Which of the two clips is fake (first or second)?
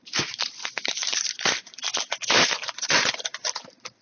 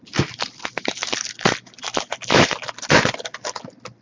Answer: first